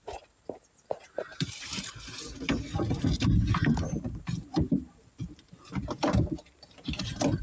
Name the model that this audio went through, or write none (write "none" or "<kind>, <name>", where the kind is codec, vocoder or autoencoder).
vocoder, BigVGAN v2